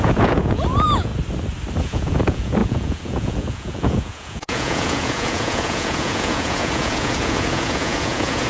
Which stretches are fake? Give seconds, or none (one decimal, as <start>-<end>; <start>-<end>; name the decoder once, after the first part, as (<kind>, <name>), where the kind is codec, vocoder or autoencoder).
0.0-1.1 (vocoder, Vocos); 1.8-8.5